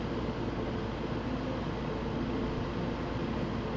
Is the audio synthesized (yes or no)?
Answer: no